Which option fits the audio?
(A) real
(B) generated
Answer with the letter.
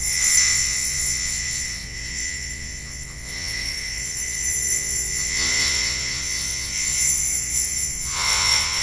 B